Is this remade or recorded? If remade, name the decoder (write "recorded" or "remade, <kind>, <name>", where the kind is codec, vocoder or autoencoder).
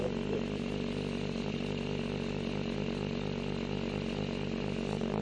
recorded